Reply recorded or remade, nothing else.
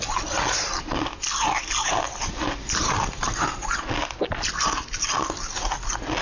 recorded